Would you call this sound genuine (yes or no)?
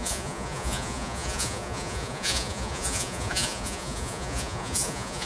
no